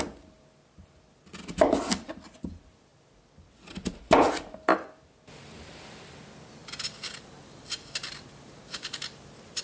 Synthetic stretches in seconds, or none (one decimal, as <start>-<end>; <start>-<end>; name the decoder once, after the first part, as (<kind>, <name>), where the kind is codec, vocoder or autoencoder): none